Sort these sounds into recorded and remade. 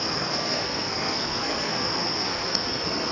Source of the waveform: remade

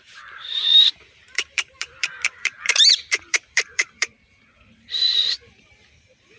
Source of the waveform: remade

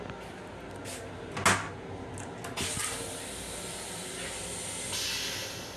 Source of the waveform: recorded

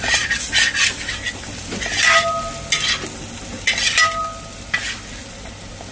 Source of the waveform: recorded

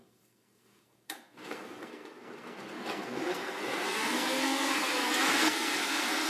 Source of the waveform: remade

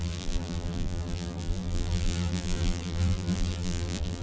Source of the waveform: remade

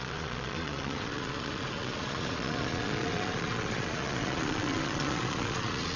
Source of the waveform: remade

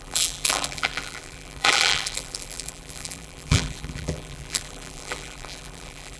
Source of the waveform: remade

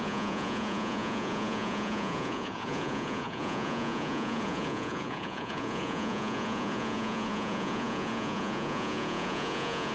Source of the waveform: remade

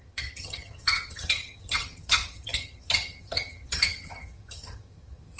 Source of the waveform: remade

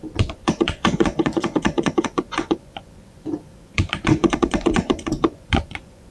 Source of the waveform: remade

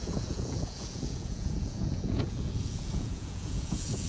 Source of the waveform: remade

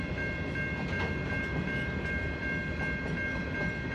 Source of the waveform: recorded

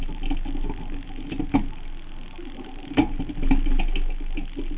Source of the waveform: recorded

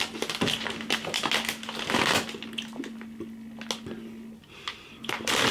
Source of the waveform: recorded